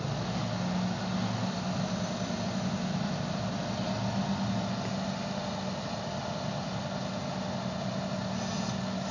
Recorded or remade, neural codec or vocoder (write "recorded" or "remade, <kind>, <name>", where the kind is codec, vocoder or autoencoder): recorded